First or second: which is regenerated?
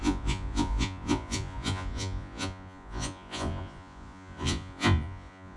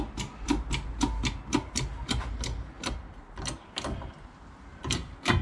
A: first